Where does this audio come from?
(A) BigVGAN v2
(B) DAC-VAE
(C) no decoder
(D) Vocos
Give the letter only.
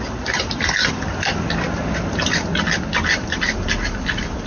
C